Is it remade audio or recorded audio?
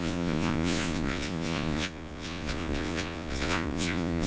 remade